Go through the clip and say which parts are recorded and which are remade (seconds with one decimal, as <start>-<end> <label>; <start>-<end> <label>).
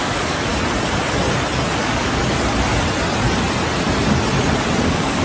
0.0-0.5 remade; 0.5-1.8 recorded; 1.8-2.2 remade; 2.2-4.8 recorded; 4.8-5.2 remade